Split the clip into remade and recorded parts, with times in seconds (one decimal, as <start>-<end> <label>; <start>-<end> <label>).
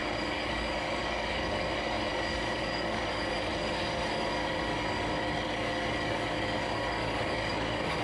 0.0-8.0 remade